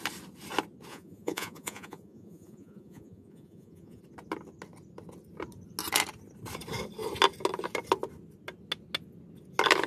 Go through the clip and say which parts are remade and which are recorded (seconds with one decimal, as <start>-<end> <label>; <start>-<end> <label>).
0.0-0.9 recorded; 0.9-4.0 remade; 4.0-9.9 recorded

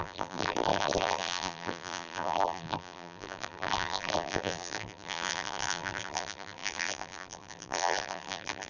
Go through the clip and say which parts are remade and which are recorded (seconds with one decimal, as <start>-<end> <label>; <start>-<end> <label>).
0.0-8.7 remade

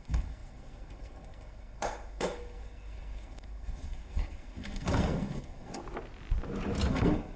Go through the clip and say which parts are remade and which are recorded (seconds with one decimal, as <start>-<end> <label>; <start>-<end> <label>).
0.0-5.8 remade; 5.8-6.9 recorded; 6.9-7.4 remade